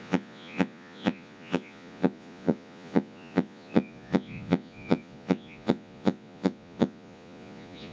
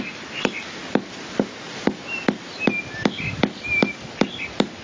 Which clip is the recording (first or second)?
second